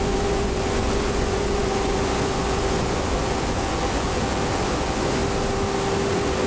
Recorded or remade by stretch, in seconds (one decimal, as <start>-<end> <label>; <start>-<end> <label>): 0.0-5.2 remade; 5.2-6.1 recorded; 6.1-6.5 remade